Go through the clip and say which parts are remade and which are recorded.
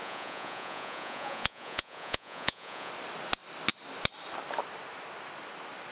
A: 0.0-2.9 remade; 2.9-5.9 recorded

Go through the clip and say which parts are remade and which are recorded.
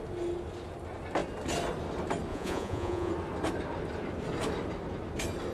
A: 0.0-2.3 recorded; 2.3-3.1 remade; 3.1-5.5 recorded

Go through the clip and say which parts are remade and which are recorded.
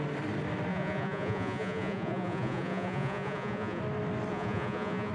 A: 0.0-0.7 recorded; 0.7-3.8 remade; 3.8-4.3 recorded; 4.3-5.1 remade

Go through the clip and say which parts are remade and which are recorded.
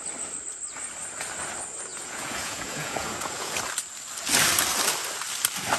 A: 0.0-1.9 recorded; 1.9-3.5 remade; 3.5-5.8 recorded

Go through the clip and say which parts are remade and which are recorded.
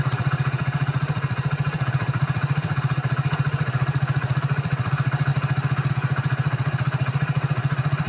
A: 0.0-5.3 remade; 5.3-5.9 recorded; 5.9-8.1 remade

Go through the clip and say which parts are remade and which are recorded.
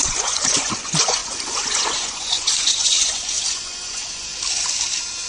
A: 0.0-4.3 remade; 4.3-5.3 recorded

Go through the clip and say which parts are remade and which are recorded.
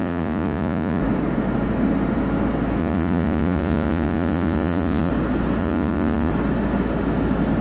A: 0.0-1.0 remade; 1.0-2.8 recorded; 2.8-5.1 remade; 5.1-5.6 recorded; 5.6-6.3 remade; 6.3-7.6 recorded